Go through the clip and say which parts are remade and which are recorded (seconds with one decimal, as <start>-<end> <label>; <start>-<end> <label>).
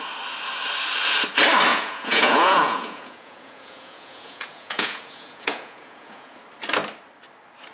0.0-1.7 recorded; 1.7-6.3 remade; 6.3-7.7 recorded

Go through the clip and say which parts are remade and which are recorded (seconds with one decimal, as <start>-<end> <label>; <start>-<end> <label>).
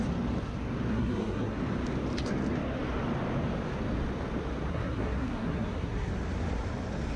0.0-0.9 recorded; 0.9-1.6 remade; 1.6-4.7 recorded; 4.7-6.1 remade; 6.1-7.2 recorded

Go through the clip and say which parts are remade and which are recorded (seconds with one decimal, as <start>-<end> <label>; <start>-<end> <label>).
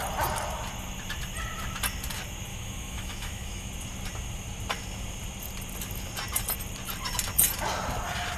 0.0-2.5 recorded; 2.5-3.7 remade; 3.7-8.4 recorded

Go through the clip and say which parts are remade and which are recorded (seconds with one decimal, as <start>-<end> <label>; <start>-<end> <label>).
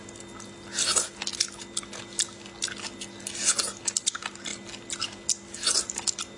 0.0-6.4 recorded